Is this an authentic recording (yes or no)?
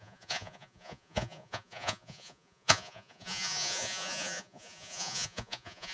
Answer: no